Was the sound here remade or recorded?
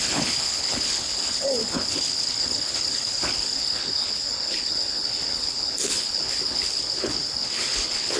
remade